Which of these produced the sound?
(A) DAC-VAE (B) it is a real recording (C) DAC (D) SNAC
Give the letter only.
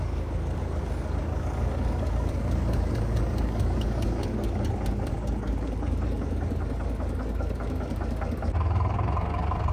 C